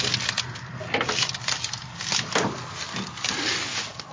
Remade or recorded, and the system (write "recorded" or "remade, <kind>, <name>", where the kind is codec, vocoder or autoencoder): recorded